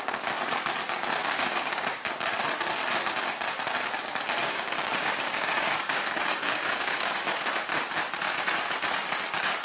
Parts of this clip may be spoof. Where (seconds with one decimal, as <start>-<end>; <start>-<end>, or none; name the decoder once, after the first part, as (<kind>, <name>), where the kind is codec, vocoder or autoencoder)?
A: 1.2-2.0 (codec, DAC); 4.4-7.2